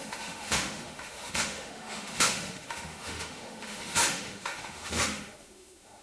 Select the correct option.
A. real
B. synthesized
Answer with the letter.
B